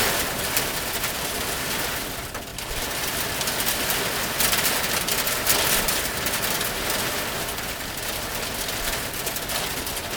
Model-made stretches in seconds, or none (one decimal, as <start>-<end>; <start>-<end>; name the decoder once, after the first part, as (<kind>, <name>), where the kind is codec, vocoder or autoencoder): 0.0-2.5 (vocoder, BigVGAN v2); 7.4-10.2